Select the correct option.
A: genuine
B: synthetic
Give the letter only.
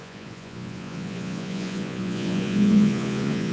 B